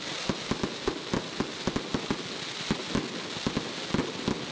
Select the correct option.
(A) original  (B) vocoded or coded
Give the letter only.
A